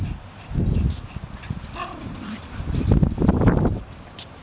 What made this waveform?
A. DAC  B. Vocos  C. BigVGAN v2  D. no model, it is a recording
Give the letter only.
D